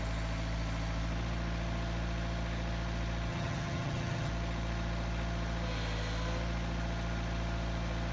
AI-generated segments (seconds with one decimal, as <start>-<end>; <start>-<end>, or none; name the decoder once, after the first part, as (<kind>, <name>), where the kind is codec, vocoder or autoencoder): 3.3-4.3 (vocoder, HiFi-GAN)